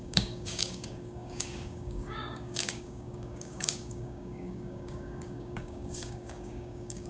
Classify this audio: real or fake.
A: fake